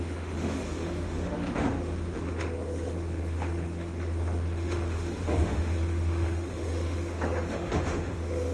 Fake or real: fake